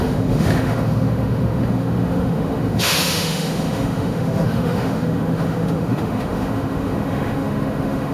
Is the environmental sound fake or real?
fake